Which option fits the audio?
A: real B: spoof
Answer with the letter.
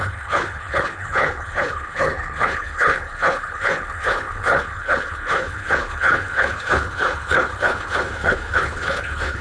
B